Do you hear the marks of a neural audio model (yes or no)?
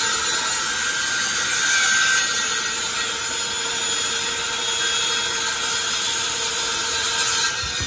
no